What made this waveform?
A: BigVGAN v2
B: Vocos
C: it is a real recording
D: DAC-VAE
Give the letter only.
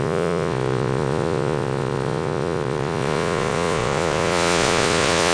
B